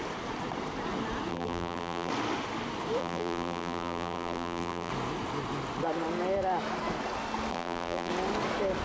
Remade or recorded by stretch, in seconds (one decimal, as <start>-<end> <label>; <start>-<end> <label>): 0.0-1.3 recorded; 1.3-2.1 remade; 2.1-3.0 recorded; 3.0-4.9 remade; 4.9-7.5 recorded; 7.5-8.1 remade; 8.1-8.8 recorded